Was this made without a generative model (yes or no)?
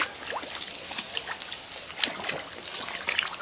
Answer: no